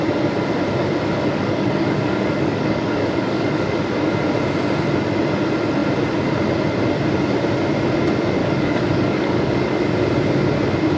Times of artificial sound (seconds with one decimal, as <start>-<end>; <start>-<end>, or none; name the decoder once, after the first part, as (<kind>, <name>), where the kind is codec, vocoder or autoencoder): 1.3-3.7 (codec, DAC); 8.4-9.8